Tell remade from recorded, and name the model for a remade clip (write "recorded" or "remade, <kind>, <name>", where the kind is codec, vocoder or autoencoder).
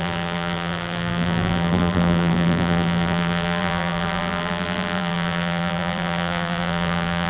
remade, vocoder, BigVGAN v2